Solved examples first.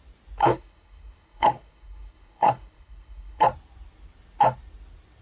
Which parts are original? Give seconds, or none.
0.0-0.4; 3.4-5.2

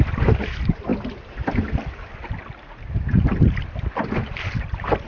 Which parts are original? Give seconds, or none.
0.0-5.1

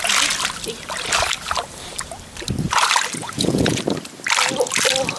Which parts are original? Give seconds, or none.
0.0-3.2; 3.8-5.2

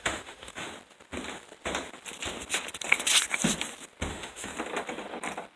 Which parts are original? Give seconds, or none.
0.7-4.1; 4.5-5.6

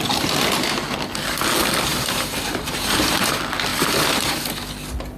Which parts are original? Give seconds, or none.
0.0-1.9; 3.3-3.7; 4.4-5.2

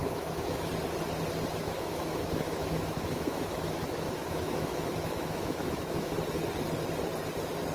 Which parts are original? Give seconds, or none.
0.7-1.5; 6.1-7.7

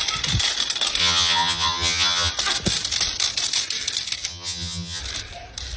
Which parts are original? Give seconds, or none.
0.0-1.0; 2.3-4.3; 5.0-5.8